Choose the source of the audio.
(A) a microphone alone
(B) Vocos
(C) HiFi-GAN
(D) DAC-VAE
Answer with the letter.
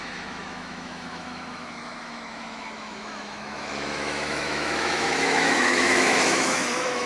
D